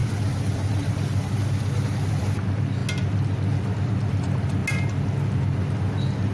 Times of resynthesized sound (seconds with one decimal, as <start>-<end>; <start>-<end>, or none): none